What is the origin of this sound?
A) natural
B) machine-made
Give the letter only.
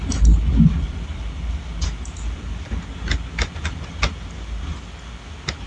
A